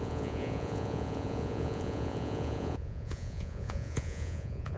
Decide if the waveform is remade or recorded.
remade